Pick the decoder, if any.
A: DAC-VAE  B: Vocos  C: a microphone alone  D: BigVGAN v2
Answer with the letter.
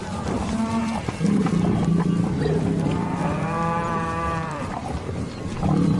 D